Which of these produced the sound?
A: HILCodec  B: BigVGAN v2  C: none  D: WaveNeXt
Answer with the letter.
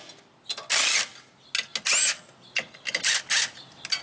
C